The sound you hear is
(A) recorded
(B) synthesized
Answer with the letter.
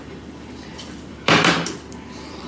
B